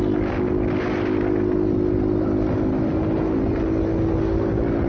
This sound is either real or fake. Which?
real